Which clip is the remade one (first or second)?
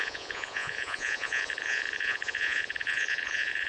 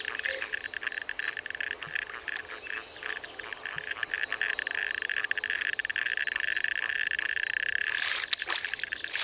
first